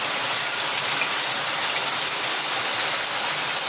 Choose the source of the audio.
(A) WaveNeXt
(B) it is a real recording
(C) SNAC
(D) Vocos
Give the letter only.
B